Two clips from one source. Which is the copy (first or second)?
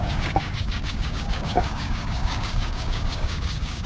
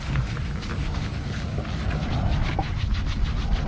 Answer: first